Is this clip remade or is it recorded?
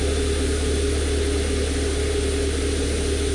recorded